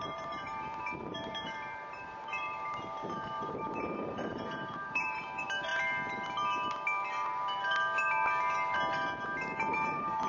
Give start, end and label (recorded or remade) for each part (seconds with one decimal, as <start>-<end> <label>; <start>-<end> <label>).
0.0-5.7 remade; 5.7-9.7 recorded; 9.7-10.3 remade